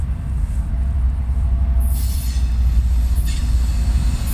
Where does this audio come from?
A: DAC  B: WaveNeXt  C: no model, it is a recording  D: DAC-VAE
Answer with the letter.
C